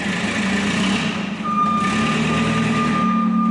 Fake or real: real